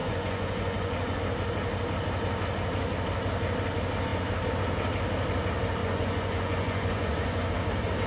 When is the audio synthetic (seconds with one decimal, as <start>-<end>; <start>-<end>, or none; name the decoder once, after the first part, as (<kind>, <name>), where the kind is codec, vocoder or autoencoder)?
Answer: 0.0-1.2 (vocoder, Vocos); 5.8-7.5